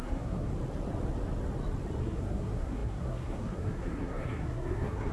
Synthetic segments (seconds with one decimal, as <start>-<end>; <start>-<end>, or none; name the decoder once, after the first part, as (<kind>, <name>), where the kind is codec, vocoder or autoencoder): 0.0-0.5 (codec, SNAC); 2.0-5.1